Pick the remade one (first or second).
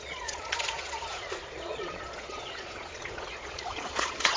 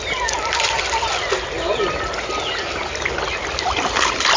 first